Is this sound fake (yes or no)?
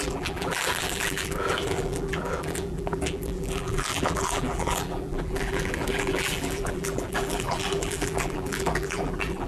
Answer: yes